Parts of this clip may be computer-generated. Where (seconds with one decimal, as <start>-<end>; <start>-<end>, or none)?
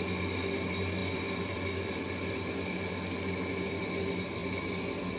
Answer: 1.0-2.3; 4.4-5.2